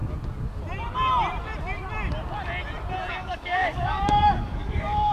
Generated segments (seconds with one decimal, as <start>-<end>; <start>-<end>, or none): 3.1-5.1